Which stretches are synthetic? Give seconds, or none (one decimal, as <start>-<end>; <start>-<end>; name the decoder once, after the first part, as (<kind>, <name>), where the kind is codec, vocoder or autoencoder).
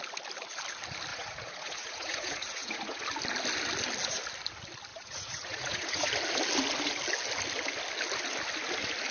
1.1-3.0 (vocoder, Vocos); 4.9-6.1